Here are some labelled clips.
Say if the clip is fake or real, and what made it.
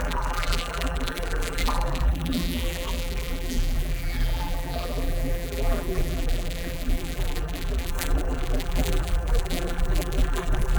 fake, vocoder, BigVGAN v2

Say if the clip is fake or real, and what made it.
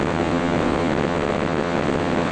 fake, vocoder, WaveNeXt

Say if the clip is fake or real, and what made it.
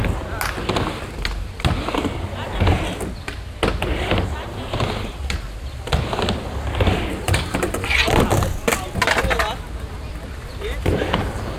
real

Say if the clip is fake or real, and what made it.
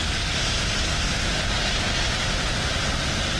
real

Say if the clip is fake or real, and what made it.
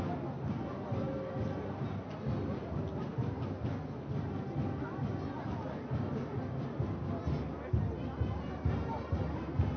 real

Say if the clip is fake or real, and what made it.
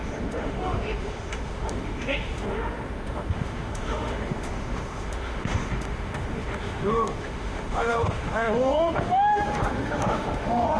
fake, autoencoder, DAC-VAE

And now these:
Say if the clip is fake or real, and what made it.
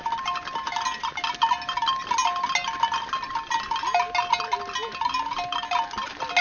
real